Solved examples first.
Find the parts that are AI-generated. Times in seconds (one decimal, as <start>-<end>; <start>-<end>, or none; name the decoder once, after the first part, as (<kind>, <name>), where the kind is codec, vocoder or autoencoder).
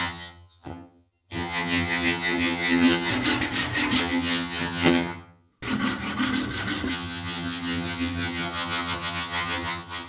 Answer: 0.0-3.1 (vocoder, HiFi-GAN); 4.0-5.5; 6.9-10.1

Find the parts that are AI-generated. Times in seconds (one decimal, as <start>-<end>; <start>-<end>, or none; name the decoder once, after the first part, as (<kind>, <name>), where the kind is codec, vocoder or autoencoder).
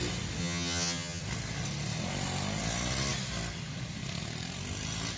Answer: 0.4-1.2 (vocoder, HiFi-GAN)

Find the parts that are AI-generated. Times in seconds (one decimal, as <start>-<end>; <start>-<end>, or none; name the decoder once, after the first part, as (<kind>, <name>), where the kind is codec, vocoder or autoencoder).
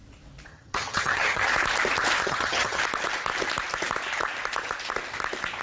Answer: 0.5-1.5 (vocoder, HiFi-GAN); 2.2-2.8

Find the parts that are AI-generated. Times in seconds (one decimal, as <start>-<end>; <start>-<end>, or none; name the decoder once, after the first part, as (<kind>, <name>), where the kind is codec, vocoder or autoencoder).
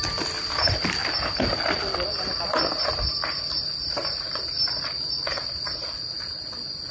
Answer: none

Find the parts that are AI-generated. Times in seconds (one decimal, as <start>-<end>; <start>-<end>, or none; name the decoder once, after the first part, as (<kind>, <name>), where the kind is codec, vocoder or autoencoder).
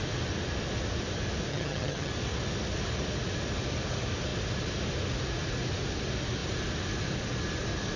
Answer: 1.5-2.1 (vocoder, HiFi-GAN)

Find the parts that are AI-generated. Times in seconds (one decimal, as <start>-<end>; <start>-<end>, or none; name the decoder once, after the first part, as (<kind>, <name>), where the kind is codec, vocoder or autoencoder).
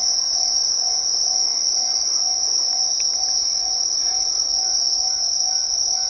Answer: none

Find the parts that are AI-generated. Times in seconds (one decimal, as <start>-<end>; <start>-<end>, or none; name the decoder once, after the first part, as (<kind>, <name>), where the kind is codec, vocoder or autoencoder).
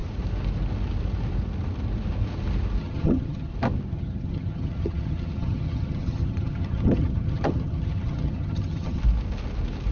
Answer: 2.8-3.5 (vocoder, HiFi-GAN); 3.9-9.0